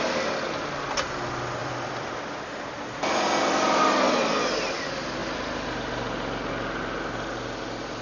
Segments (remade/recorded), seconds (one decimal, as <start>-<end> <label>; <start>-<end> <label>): 0.0-1.6 recorded; 1.6-2.2 remade; 2.2-8.0 recorded